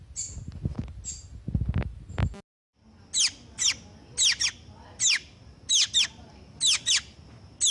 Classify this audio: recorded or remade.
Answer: recorded